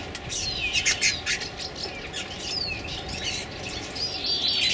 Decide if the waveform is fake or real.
real